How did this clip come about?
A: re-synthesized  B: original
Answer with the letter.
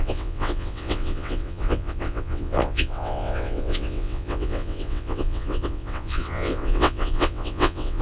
A